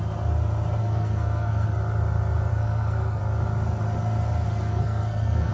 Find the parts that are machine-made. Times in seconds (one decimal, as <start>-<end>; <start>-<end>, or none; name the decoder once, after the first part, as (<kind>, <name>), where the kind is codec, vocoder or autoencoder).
0.8-1.8 (codec, SNAC); 2.5-3.2; 4.7-5.5